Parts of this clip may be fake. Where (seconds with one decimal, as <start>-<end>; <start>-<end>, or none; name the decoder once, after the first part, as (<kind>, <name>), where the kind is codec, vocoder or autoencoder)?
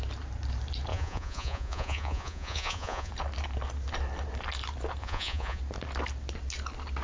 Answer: 0.9-3.1 (vocoder, Vocos); 5.0-5.6